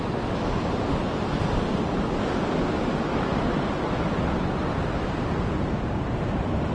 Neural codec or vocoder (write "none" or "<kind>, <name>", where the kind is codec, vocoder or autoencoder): none